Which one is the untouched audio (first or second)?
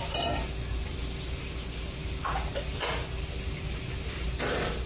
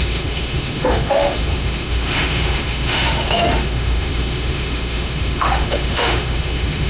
first